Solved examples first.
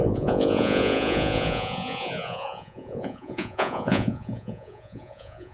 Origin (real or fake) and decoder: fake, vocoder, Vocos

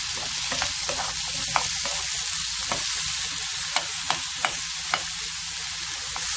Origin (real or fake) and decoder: real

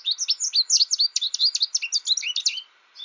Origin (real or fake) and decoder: real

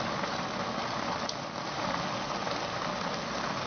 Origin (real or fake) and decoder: real